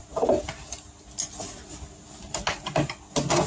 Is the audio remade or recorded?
recorded